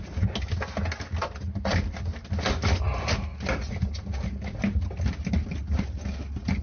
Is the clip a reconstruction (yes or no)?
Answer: no